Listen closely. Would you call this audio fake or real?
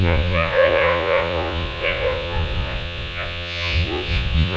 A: fake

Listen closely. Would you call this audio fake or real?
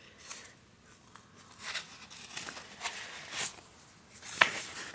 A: real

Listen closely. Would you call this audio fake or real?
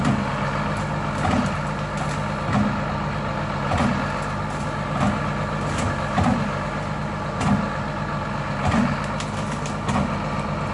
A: real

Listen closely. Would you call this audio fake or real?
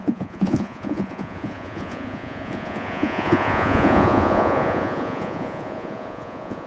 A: fake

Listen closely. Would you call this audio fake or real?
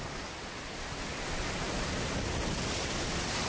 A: real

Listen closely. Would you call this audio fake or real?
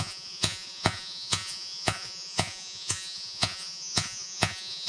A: fake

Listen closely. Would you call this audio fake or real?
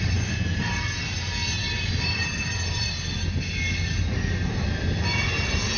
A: real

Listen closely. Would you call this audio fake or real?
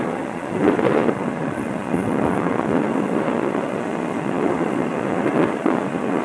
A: fake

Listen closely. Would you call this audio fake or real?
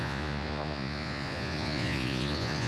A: fake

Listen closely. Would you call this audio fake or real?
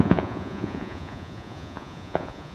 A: fake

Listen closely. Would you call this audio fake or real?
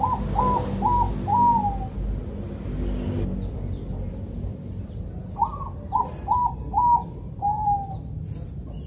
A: real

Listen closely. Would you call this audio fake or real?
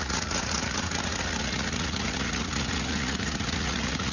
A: fake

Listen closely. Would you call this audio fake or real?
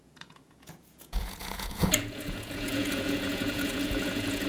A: fake